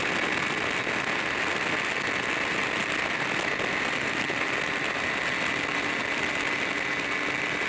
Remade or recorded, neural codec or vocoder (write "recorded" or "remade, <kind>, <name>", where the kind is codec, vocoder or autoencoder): recorded